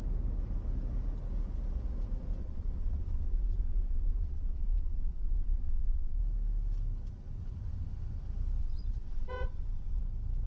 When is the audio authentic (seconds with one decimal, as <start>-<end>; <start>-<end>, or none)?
0.0-2.4; 6.2-8.6; 10.0-10.5